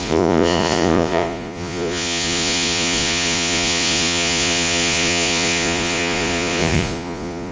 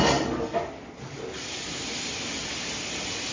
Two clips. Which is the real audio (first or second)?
second